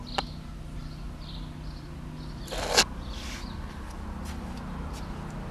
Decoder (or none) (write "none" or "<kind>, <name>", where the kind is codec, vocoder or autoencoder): none